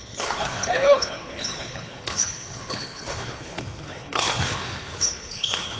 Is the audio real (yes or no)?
no